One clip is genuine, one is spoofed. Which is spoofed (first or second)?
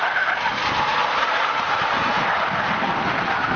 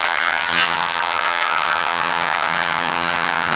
second